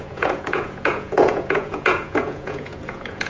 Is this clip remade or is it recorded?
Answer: remade